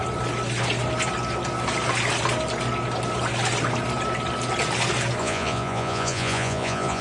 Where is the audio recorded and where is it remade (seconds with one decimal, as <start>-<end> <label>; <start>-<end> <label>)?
0.0-5.2 recorded; 5.2-7.0 remade